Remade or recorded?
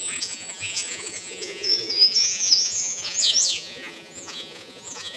remade